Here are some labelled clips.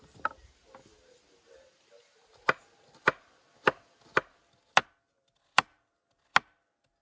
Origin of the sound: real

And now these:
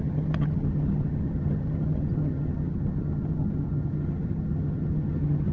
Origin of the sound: fake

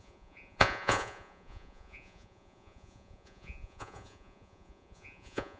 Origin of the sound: fake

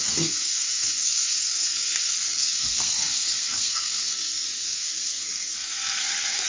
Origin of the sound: fake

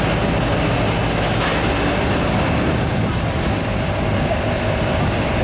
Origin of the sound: real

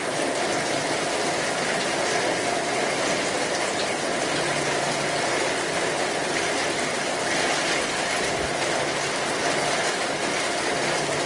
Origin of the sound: real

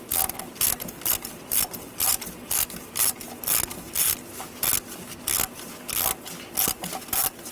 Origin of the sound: real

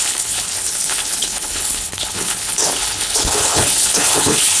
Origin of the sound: fake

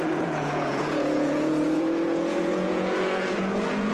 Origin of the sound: fake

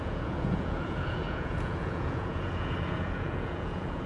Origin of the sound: fake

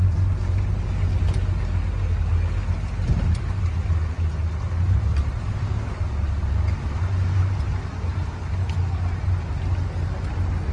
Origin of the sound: real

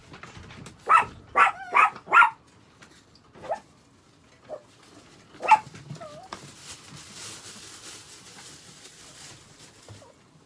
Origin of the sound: real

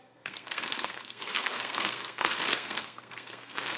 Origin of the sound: fake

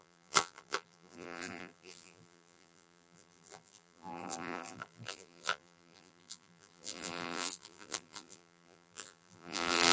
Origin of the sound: fake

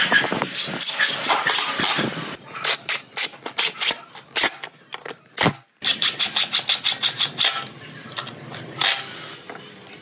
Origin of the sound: real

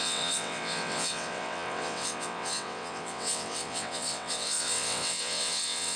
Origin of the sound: fake